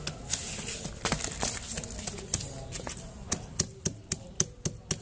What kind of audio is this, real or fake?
real